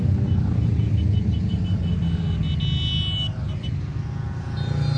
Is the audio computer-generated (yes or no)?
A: no